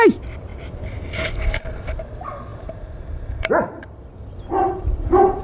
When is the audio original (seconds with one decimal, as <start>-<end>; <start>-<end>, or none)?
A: 0.0-0.5; 2.0-2.5